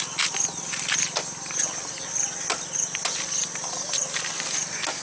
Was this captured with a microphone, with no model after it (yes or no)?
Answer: yes